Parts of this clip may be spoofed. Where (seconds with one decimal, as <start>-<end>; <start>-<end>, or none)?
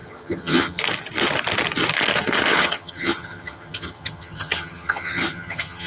0.0-0.8; 2.5-5.9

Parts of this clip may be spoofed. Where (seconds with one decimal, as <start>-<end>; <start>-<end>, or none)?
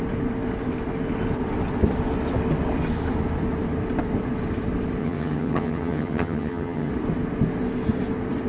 5.0-6.9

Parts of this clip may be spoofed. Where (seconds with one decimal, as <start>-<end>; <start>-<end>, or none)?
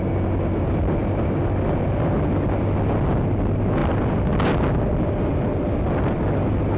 none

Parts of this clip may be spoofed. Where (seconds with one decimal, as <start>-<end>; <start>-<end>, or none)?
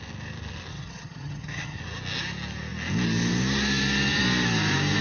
0.7-1.8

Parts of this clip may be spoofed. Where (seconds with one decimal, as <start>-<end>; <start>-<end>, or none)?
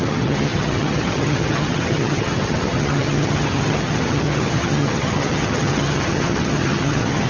0.0-7.3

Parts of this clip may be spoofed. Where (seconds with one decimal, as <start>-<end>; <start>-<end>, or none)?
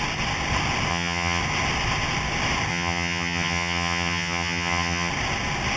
0.9-1.4; 2.7-5.1